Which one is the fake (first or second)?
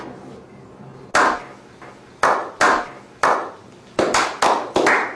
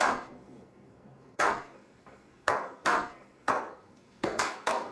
second